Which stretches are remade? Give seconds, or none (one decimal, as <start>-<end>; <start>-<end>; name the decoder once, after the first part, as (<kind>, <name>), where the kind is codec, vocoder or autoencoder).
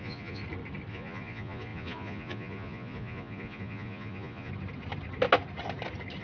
0.0-0.4 (vocoder, Vocos); 0.9-4.5